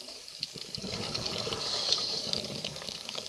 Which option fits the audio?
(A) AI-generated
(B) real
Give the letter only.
A